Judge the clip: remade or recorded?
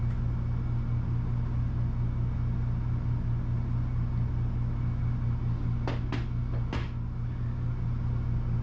recorded